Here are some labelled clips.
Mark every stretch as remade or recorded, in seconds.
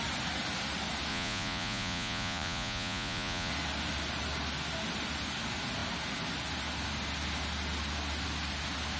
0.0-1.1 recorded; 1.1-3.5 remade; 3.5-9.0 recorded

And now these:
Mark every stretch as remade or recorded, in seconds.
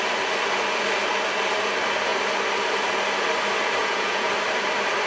0.0-3.8 recorded; 3.8-4.3 remade; 4.3-5.1 recorded